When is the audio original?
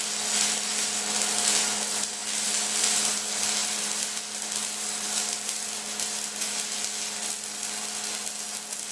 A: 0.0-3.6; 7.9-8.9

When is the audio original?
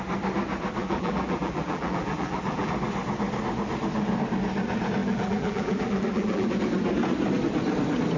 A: 0.0-0.8; 2.7-5.0; 6.5-8.2